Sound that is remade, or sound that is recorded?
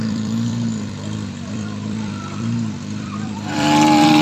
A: remade